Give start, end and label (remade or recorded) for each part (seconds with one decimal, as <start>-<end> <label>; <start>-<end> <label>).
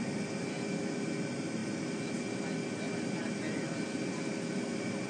0.0-5.1 recorded